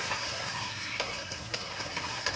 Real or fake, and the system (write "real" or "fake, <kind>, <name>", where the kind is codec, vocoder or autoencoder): fake, codec, SNAC